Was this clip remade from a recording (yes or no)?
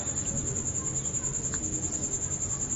no